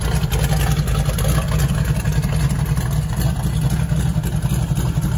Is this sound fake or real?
real